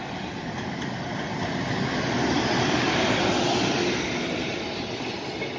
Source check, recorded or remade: recorded